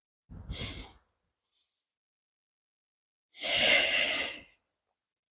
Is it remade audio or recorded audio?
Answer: recorded